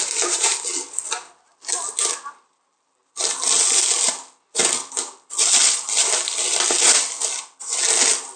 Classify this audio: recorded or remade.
recorded